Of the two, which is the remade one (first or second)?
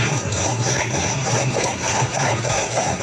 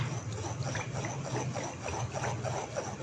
first